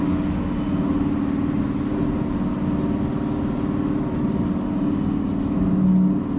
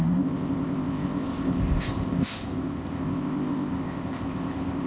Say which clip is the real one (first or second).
first